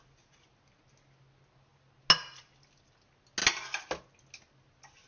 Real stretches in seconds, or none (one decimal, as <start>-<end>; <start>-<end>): 0.0-5.1